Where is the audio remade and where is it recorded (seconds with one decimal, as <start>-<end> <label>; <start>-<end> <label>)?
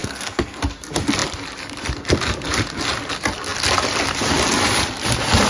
0.0-0.6 remade; 0.6-5.5 recorded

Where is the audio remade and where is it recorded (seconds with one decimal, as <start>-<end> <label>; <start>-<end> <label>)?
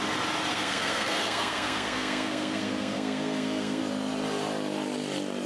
0.0-0.5 recorded; 0.5-3.8 remade; 3.8-5.5 recorded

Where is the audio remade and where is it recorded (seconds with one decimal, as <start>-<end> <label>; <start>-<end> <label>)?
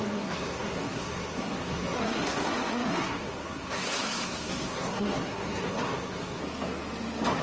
0.0-6.4 remade; 6.4-7.4 recorded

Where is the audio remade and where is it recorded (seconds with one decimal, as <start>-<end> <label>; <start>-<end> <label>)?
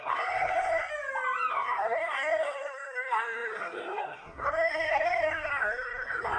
0.0-0.9 remade; 0.9-1.5 recorded; 1.5-6.4 remade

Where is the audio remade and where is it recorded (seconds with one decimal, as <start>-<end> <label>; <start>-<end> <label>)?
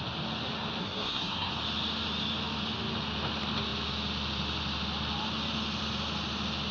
0.0-0.8 recorded; 0.8-1.5 remade; 1.5-6.7 recorded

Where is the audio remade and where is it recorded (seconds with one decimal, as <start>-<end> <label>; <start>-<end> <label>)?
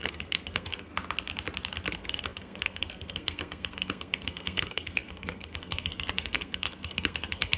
0.0-0.9 remade; 0.9-1.9 recorded; 1.9-7.6 remade